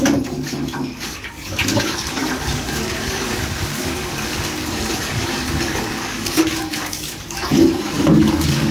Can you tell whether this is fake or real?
fake